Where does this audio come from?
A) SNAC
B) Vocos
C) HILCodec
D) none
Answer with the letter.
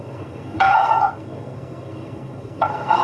A